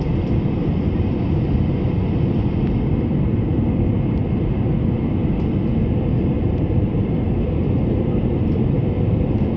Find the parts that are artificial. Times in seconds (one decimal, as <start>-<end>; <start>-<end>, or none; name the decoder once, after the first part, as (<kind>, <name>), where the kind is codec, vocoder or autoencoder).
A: 0.0-5.2 (vocoder, BigVGAN v2); 5.9-9.6